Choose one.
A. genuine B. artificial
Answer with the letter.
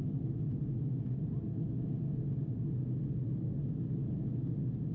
A